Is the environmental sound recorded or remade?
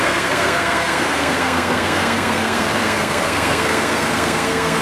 remade